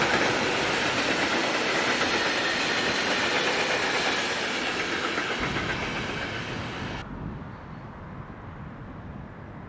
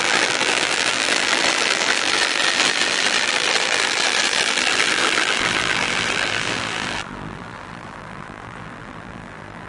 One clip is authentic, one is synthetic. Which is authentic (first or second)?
first